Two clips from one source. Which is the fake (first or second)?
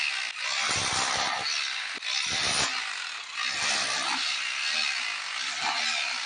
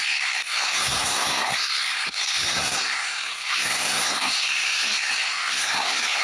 second